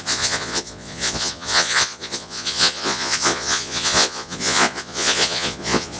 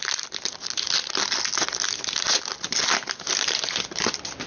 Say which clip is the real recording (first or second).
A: second